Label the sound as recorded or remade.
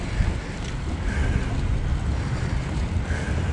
recorded